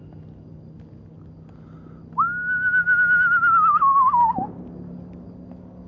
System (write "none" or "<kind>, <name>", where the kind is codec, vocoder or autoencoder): none